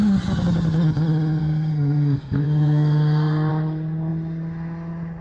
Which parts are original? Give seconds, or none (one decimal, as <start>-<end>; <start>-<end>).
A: 0.0-1.4; 3.5-5.2